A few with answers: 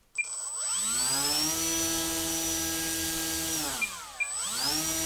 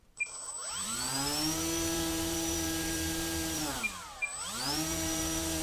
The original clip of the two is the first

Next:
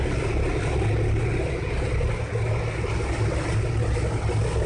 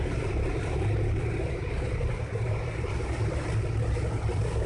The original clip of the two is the first